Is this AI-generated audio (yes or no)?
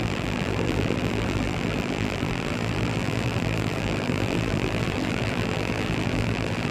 yes